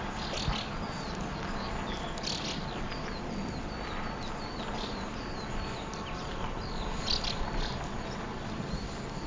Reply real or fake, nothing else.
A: real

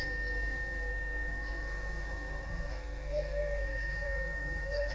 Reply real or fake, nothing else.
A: fake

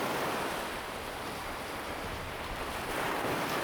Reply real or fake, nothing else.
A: real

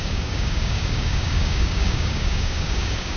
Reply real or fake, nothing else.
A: fake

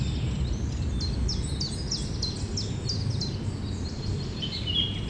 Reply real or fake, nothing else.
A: real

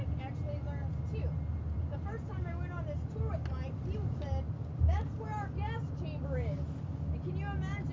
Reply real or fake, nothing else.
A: real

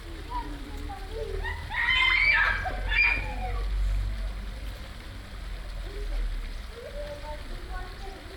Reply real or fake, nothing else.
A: real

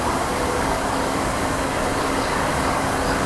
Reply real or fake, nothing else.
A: fake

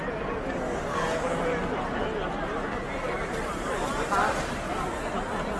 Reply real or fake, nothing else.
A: real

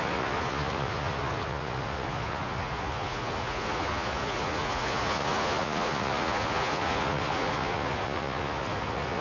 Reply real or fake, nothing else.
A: fake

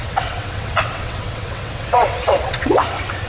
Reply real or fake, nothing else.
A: fake